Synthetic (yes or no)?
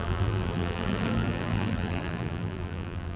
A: yes